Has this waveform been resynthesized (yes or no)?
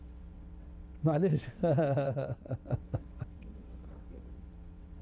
yes